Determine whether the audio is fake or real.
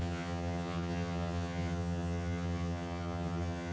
fake